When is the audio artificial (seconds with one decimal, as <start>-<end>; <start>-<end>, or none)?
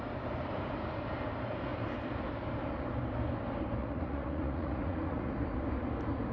3.8-5.3